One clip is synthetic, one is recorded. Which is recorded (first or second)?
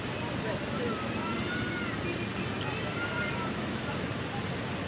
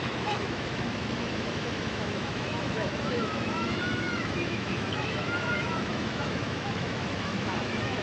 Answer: first